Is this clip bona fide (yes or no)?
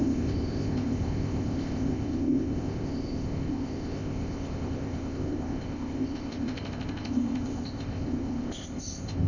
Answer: no